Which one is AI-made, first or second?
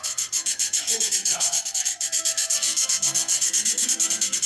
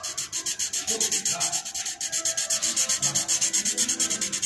first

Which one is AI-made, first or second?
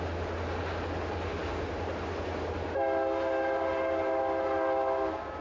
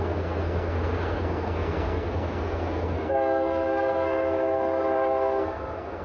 second